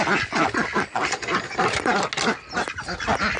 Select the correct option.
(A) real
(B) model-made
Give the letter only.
A